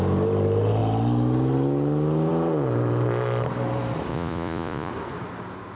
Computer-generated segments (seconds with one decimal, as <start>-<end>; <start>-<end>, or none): 4.1-4.9